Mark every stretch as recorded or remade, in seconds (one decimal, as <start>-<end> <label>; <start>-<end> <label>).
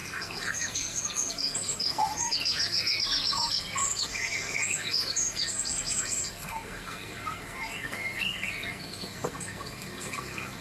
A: 0.0-10.6 remade